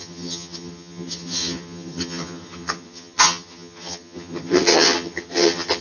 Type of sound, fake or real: fake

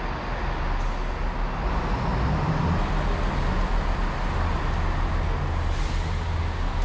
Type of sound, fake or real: real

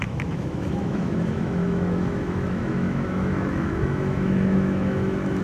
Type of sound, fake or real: fake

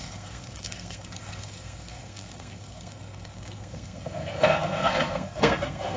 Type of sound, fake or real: fake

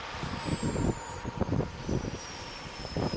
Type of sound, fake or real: real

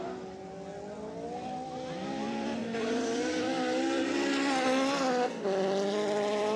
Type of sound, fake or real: real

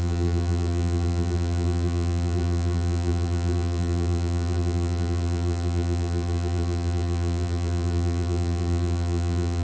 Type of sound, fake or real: fake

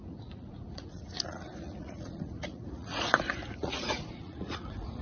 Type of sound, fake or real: fake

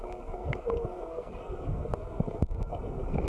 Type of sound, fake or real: fake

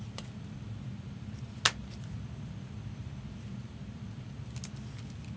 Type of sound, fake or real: real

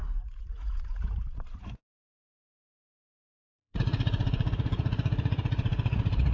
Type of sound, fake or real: fake